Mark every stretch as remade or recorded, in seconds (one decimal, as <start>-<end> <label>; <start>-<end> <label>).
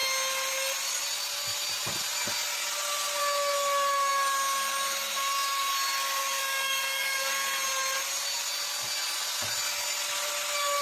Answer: 0.0-6.2 recorded; 6.2-7.3 remade; 7.3-10.8 recorded